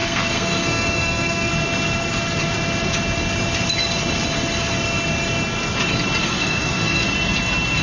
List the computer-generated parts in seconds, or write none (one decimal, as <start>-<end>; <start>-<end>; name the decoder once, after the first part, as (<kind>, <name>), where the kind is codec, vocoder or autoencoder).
0.0-1.5 (codec, SNAC); 6.2-7.0